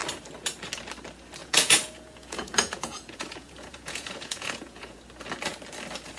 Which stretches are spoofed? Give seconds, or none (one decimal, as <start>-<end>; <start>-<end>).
1.4-5.0